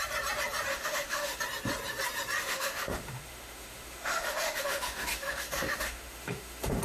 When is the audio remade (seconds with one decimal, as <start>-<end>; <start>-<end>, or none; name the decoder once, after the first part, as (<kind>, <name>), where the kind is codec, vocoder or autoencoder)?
0.7-1.4 (autoencoder, DAC-VAE); 2.4-6.8